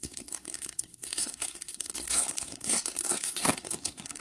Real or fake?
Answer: fake